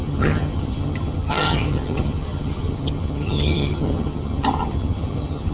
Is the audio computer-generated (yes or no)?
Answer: yes